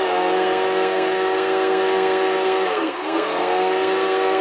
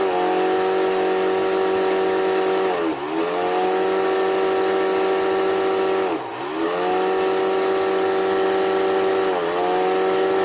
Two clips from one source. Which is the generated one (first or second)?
first